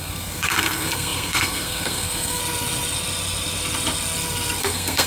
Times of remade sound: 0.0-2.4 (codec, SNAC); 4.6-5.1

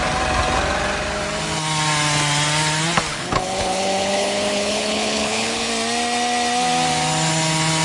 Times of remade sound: 3.1-5.7 (codec, HILCodec)

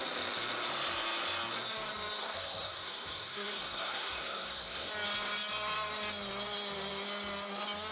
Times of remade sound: 2.2-4.9 (codec, SNAC)

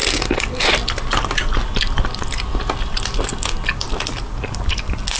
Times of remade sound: none